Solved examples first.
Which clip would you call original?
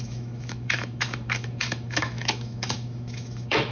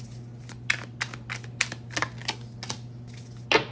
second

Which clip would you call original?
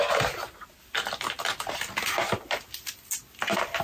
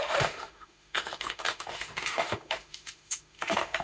first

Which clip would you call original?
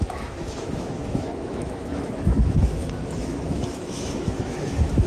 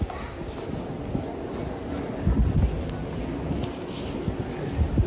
second